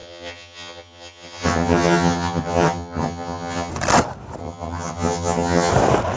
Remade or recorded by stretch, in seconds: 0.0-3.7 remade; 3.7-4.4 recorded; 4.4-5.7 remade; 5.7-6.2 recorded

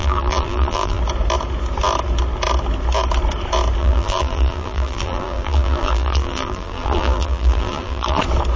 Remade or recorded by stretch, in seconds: 0.0-1.0 remade; 1.0-3.8 recorded; 3.8-8.2 remade; 8.2-8.6 recorded